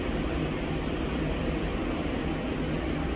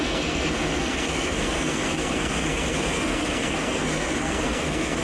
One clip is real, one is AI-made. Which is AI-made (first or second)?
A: second